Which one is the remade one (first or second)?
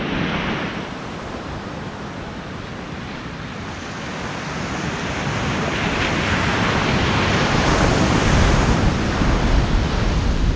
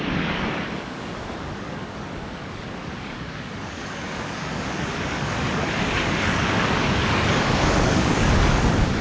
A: second